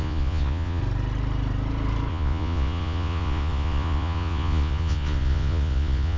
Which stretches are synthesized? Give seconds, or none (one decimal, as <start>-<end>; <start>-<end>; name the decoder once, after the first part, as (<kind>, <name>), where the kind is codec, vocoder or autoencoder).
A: 0.0-0.8 (vocoder, Vocos); 2.1-6.2